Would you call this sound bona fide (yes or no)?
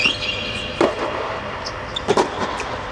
yes